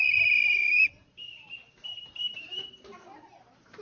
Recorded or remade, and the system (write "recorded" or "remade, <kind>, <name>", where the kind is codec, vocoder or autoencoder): remade, vocoder, BigVGAN v2